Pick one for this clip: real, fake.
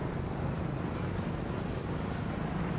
real